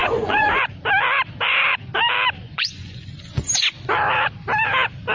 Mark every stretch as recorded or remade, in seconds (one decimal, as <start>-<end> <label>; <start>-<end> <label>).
0.0-0.5 remade; 0.5-2.4 recorded; 2.4-3.4 remade; 3.4-5.1 recorded